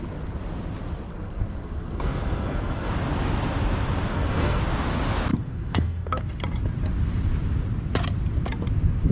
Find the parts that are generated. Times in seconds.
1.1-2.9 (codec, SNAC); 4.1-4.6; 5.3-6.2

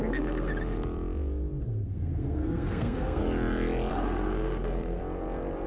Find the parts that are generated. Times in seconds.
0.0-0.5 (codec, SNAC); 1.6-3.2; 3.9-5.0